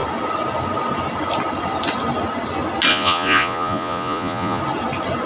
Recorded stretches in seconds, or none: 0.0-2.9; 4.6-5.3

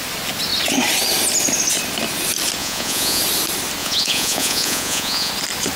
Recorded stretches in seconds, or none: 0.0-2.6; 3.2-3.8; 5.3-5.8

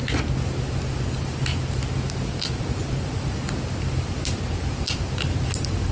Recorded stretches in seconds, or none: 0.0-5.9

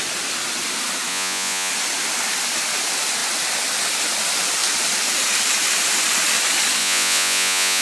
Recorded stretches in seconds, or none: 0.0-1.1; 1.7-6.8

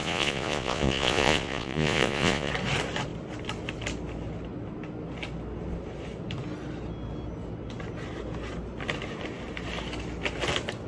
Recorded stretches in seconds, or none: 2.5-10.9

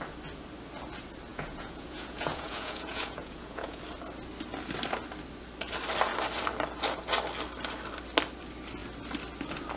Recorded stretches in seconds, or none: 0.0-1.3; 3.8-9.8